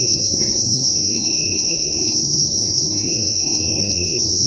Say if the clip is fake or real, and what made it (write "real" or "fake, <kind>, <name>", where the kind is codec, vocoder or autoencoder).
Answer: fake, codec, SNAC